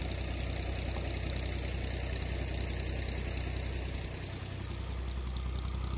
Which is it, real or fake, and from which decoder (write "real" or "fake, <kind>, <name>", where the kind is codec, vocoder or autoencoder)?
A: real